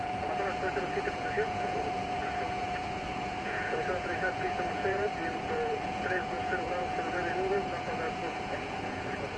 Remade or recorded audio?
remade